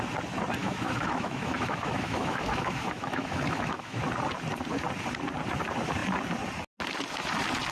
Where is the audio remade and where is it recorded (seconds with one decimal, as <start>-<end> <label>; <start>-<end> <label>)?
0.0-0.6 recorded; 0.6-4.0 remade; 4.0-7.7 recorded